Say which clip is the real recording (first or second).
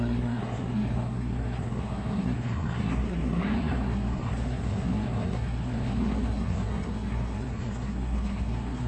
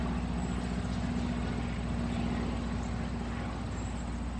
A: second